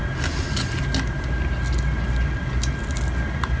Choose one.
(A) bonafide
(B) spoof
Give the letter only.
A